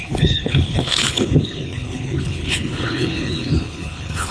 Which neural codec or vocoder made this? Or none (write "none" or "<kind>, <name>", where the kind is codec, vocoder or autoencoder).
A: codec, HILCodec